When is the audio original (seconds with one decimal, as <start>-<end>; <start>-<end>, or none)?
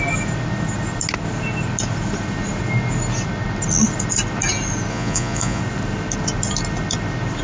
0.0-4.9; 5.6-7.4